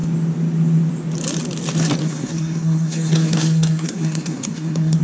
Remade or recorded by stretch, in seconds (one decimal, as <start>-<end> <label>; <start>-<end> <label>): 0.0-2.0 recorded; 2.0-5.0 remade

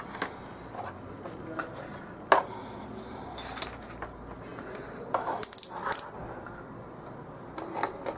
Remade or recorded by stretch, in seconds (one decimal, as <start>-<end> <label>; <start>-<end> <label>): 0.0-8.2 recorded

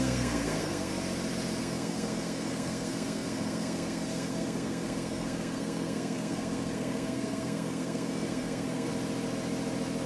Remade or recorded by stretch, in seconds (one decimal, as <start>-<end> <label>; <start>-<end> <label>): 0.0-0.9 remade; 0.9-1.6 recorded; 1.6-8.9 remade; 8.9-10.1 recorded

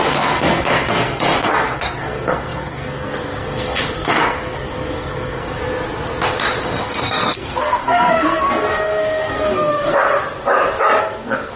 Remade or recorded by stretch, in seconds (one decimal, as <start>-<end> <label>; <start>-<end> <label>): 0.0-5.6 remade; 5.6-6.8 recorded; 6.8-10.2 remade; 10.2-11.0 recorded; 11.0-11.6 remade